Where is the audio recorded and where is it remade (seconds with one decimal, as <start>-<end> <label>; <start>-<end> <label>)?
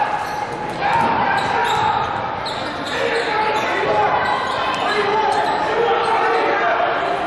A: 0.0-7.3 recorded